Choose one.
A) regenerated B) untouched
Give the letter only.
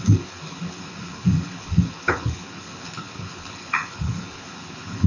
A